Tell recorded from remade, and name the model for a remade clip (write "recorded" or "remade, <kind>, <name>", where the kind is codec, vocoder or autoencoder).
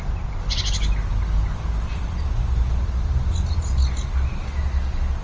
recorded